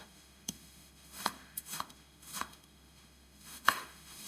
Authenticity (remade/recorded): remade